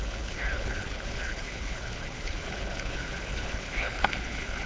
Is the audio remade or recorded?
remade